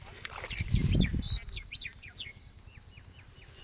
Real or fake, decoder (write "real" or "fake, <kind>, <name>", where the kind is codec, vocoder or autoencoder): real